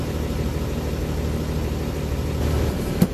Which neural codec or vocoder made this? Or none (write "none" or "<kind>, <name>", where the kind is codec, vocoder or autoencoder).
none